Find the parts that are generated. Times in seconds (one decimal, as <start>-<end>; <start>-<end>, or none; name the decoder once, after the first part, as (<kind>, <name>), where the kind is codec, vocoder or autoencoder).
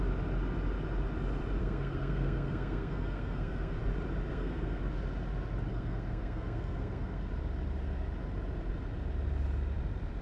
1.6-3.8 (codec, SNAC); 4.3-4.8; 5.7-7.3